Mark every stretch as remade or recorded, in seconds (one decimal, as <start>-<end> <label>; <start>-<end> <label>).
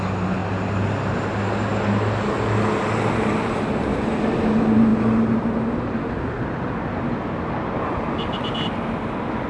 0.0-9.5 recorded